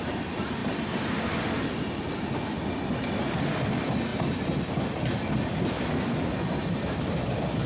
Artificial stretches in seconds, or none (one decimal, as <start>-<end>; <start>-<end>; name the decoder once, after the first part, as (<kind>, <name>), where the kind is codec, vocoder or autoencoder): 4.1-4.8 (vocoder, BigVGAN v2)